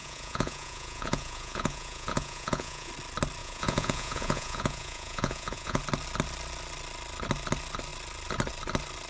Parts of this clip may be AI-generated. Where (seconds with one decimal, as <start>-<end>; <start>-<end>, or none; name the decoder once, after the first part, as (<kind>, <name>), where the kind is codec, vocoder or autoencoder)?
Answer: 0.0-2.9 (vocoder, Vocos); 3.4-5.8